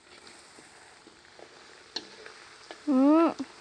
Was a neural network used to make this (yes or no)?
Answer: no